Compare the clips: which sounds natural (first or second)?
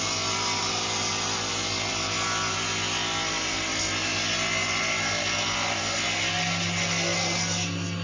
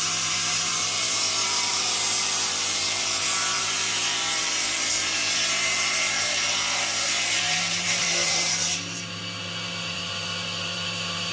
first